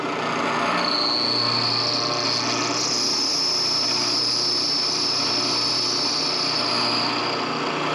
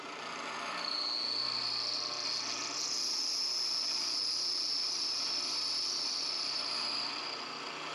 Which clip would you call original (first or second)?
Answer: first